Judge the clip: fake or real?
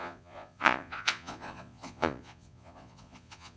fake